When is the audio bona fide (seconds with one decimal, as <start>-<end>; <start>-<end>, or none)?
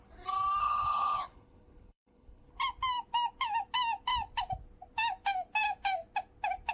0.0-0.6; 2.5-6.7